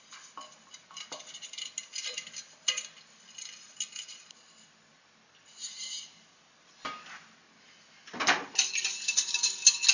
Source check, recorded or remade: recorded